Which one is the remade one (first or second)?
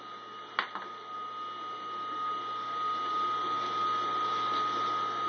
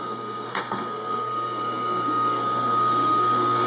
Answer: second